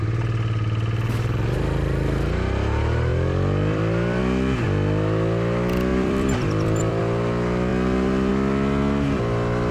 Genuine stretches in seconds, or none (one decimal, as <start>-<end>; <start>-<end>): 0.0-3.1; 4.2-5.9; 7.0-9.7